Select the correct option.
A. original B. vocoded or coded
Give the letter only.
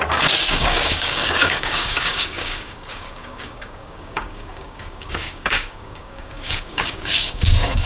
B